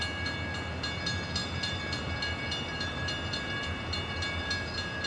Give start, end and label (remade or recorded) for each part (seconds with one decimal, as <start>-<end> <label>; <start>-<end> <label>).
0.0-1.4 recorded; 1.4-4.5 remade; 4.5-5.1 recorded